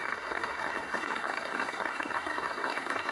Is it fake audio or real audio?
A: fake